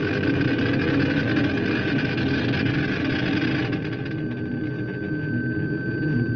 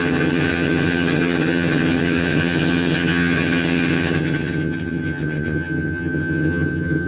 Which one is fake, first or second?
second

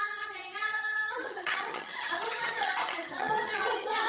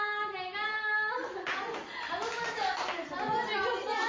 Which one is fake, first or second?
first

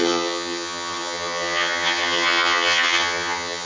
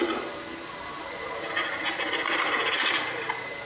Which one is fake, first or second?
first